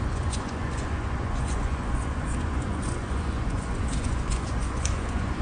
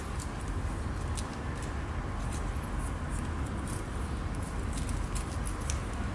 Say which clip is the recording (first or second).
second